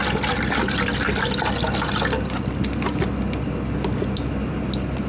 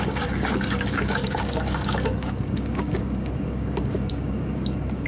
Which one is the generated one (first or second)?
second